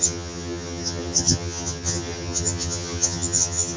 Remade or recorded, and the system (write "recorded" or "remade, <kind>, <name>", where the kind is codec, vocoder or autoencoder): remade, vocoder, HiFi-GAN